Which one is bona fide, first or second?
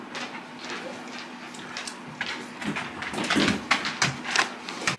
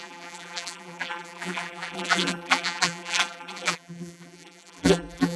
first